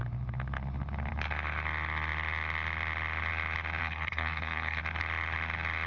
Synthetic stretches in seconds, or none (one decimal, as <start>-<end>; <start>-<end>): 3.8-4.8